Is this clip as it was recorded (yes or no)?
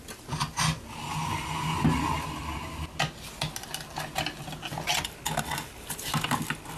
yes